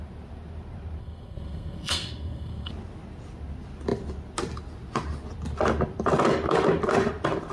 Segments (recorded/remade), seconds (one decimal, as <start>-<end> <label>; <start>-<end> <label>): 0.0-1.0 recorded; 1.0-2.7 remade; 2.7-7.5 recorded